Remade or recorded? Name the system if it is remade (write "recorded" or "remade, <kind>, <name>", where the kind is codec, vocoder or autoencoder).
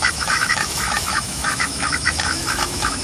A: remade, autoencoder, DAC-VAE